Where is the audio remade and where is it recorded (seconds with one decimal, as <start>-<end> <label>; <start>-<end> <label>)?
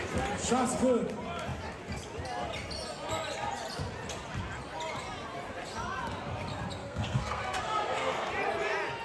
0.0-6.8 recorded; 6.8-8.3 remade; 8.3-9.0 recorded